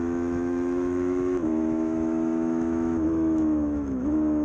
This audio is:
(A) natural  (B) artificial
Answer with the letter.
B